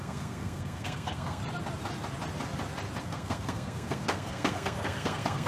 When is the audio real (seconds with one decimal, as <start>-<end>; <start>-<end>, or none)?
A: 1.4-3.0